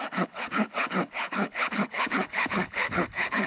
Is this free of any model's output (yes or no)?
no